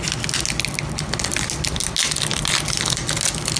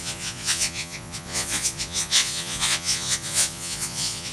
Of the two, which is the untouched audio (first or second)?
first